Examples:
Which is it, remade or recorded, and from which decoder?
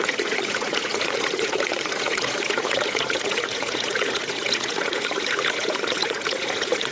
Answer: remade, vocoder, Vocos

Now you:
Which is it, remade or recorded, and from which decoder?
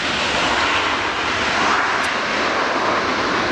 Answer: recorded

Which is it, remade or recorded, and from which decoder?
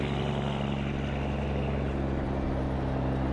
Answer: recorded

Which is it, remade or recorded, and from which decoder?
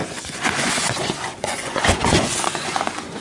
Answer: remade, vocoder, Vocos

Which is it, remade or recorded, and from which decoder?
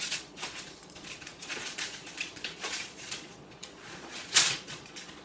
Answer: remade, vocoder, Vocos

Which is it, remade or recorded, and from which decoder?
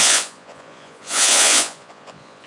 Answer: remade, vocoder, Vocos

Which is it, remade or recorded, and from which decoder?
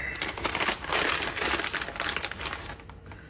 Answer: recorded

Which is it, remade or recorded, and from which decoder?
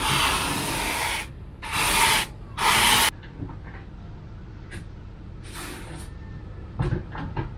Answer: recorded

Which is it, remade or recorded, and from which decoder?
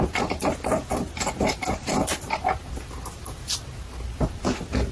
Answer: recorded